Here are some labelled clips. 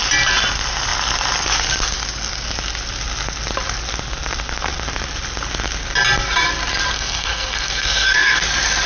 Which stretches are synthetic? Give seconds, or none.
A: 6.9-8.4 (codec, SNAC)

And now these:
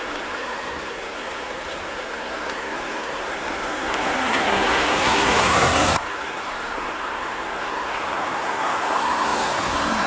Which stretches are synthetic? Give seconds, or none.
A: 0.0-10.1 (codec, SNAC)

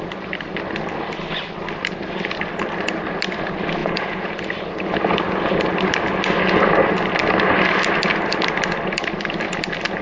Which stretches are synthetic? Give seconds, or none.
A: 3.8-4.3 (vocoder, Vocos)

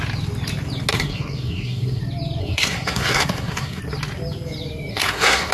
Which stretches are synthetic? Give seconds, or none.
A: 0.9-2.0 (codec, SNAC); 2.4-3.8; 4.9-5.5